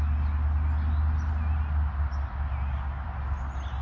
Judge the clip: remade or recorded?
recorded